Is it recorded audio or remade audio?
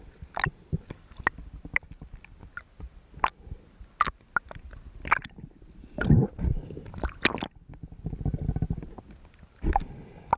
recorded